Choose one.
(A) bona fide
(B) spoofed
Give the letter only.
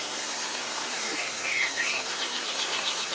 B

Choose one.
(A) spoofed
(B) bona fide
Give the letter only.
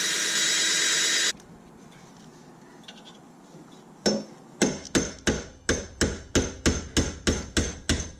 B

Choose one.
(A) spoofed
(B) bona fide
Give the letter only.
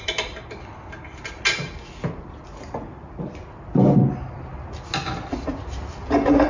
B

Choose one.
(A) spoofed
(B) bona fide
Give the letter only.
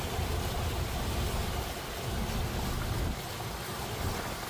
B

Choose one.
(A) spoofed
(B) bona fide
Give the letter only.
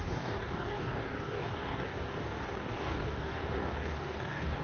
A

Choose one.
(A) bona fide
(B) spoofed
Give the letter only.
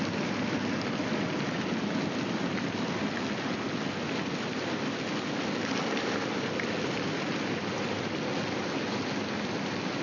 A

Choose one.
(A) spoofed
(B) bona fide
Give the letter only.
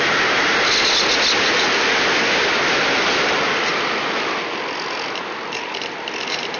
B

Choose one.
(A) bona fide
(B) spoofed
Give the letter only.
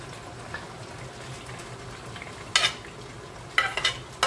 A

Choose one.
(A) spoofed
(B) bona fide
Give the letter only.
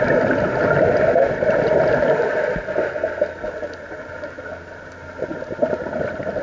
B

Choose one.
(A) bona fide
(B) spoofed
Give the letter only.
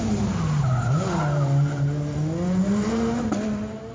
A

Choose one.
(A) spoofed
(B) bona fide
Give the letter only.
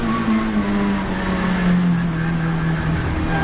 B